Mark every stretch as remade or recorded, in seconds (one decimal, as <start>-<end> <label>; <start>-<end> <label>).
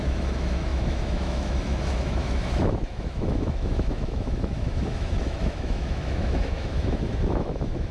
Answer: 0.0-7.9 remade